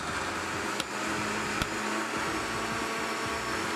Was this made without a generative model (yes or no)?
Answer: yes